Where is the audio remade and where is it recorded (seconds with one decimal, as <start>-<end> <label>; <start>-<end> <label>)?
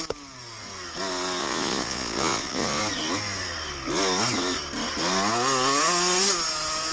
0.0-1.4 recorded; 1.4-2.8 remade; 2.8-6.9 recorded